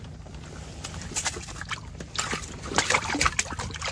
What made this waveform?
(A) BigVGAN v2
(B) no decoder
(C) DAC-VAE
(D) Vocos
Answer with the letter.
B